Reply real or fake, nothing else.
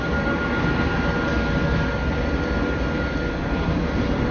real